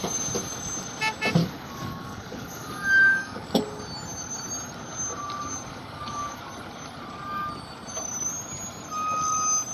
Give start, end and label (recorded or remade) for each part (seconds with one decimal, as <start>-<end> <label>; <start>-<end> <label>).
0.0-1.4 recorded; 1.4-3.6 remade; 3.6-5.7 recorded; 5.7-6.4 remade; 6.4-9.7 recorded